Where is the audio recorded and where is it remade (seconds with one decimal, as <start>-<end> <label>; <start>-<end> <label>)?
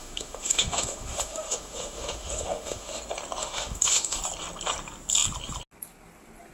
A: 0.0-3.0 remade; 3.0-3.4 recorded; 3.4-4.2 remade; 4.2-6.5 recorded